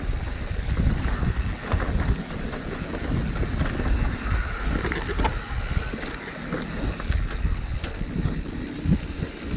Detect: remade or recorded recorded